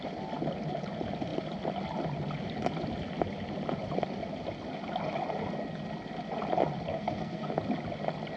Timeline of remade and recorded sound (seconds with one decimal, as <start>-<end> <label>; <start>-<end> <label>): 0.0-6.9 recorded; 6.9-7.5 remade; 7.5-8.4 recorded